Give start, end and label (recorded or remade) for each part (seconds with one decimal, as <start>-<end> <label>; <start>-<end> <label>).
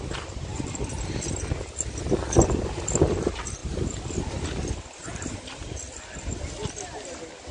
0.0-7.5 recorded